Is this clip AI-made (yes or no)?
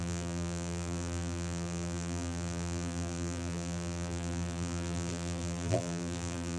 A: yes